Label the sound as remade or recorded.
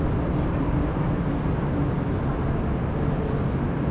recorded